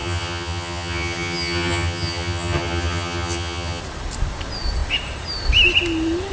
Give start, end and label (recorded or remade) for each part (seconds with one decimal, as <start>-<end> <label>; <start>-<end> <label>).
0.0-3.8 remade; 3.8-6.3 recorded